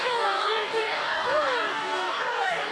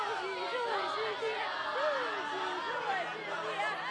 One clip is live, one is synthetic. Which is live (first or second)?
second